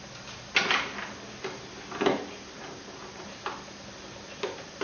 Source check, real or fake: real